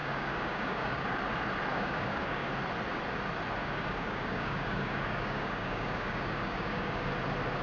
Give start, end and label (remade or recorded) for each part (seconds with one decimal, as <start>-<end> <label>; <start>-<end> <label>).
0.0-1.2 remade; 1.2-1.7 recorded; 1.7-2.5 remade; 2.5-3.6 recorded; 3.6-7.1 remade; 7.1-7.6 recorded